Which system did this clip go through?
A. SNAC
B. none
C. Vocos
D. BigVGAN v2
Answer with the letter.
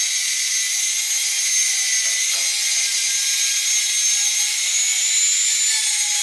B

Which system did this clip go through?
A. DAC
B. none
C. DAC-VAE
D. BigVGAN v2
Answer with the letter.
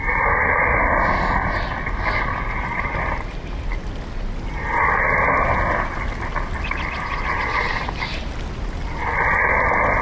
B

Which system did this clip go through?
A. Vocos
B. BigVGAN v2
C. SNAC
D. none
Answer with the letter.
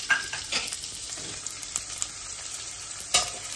B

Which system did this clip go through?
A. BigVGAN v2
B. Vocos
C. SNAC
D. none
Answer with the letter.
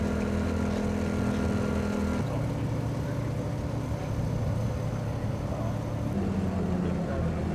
D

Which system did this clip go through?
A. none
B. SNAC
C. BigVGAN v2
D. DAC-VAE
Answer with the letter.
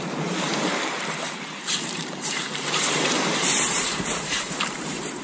C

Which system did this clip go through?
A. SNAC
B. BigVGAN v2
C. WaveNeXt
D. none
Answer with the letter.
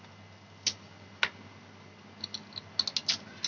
D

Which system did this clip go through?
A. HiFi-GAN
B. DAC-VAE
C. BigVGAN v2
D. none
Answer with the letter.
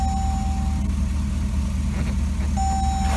D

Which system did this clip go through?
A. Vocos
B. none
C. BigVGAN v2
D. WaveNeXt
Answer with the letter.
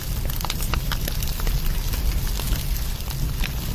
C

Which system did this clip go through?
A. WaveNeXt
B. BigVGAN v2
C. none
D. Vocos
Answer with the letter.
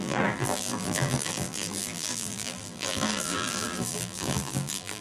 B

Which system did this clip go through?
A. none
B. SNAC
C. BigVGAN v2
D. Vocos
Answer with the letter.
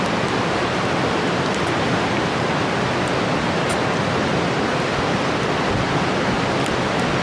A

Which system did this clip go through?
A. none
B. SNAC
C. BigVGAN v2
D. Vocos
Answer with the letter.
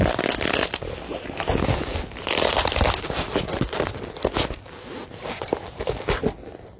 A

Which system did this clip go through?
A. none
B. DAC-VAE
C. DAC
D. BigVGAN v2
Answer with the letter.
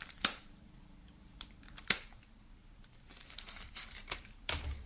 D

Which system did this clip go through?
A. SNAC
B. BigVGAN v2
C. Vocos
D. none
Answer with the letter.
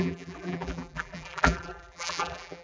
B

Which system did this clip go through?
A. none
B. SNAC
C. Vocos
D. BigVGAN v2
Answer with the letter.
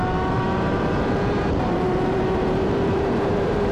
D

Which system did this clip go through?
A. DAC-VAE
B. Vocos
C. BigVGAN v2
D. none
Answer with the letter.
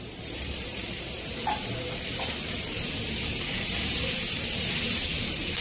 C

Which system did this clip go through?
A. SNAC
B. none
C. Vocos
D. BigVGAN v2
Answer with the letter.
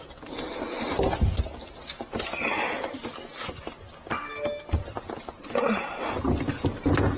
B